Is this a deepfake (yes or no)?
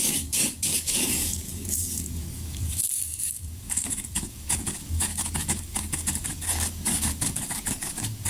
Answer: yes